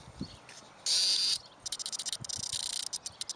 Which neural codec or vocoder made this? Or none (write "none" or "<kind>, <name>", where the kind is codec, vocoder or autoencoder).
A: none